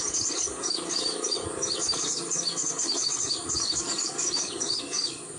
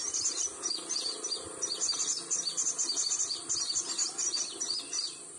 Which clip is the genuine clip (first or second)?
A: second